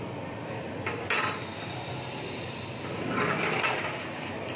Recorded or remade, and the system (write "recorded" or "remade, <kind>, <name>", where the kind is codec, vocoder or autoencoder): recorded